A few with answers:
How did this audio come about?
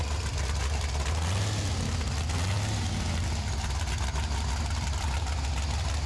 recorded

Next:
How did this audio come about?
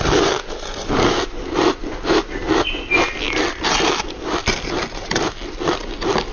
recorded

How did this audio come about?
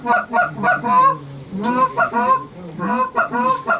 recorded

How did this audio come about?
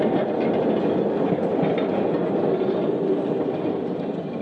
recorded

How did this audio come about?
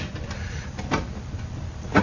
recorded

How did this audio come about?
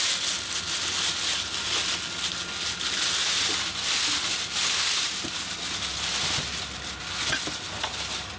recorded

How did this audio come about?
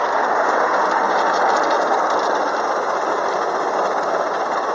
recorded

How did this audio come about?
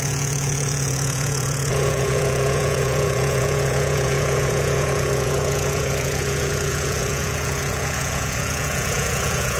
remade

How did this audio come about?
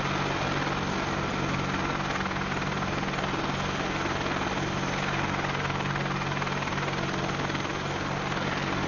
recorded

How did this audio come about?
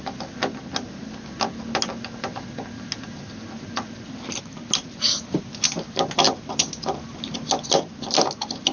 recorded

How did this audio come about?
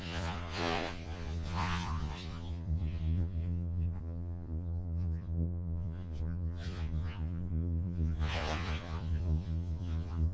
remade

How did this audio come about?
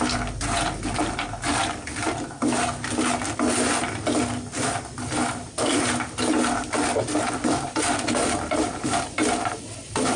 recorded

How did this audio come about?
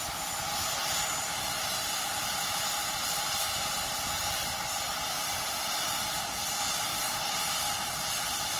recorded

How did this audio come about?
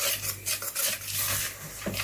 recorded